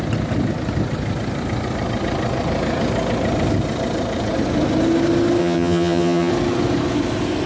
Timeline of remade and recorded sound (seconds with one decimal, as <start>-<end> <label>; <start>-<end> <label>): 0.0-5.4 recorded; 5.4-6.3 remade; 6.3-7.5 recorded